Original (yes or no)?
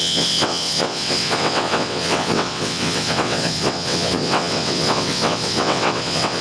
no